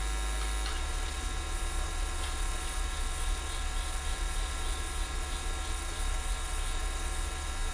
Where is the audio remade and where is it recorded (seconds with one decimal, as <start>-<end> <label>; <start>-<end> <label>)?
0.0-0.7 recorded; 0.7-7.7 remade